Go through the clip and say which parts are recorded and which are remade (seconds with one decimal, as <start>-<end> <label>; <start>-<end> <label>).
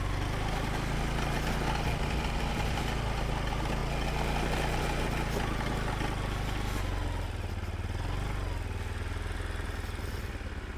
0.0-10.8 recorded